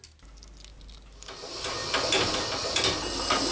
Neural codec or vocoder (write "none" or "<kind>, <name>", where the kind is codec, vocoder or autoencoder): none